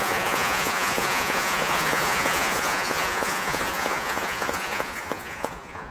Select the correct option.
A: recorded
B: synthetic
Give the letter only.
B